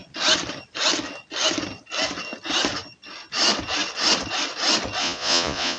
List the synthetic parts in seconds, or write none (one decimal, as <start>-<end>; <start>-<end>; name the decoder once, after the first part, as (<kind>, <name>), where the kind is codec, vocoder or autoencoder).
5.0-5.8 (vocoder, Vocos)